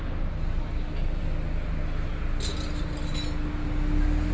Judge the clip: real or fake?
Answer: real